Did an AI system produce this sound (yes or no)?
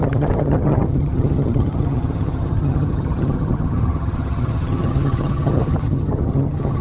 yes